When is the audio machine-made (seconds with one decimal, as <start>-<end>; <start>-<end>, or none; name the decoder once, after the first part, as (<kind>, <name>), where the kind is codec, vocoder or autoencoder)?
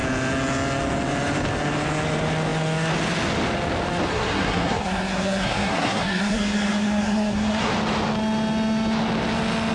4.1-7.7 (codec, SNAC)